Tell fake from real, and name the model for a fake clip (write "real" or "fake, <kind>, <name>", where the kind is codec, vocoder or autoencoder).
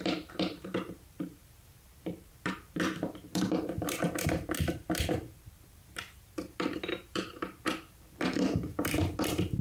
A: fake, vocoder, BigVGAN v2